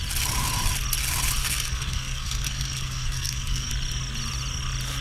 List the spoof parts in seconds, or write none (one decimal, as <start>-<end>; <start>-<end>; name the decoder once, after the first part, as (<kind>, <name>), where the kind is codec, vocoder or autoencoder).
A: 1.4-3.7 (codec, SNAC)